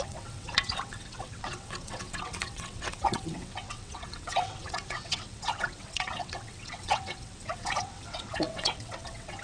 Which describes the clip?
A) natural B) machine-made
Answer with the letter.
B